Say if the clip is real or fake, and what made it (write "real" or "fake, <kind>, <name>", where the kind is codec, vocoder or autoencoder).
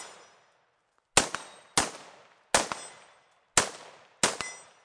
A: real